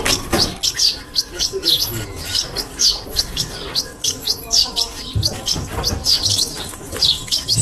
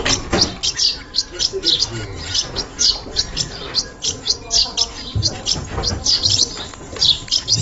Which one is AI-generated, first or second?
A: first